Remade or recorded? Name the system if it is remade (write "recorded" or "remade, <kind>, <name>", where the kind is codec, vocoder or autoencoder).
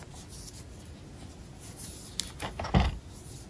recorded